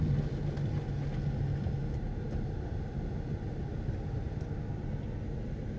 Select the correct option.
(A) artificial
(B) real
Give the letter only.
B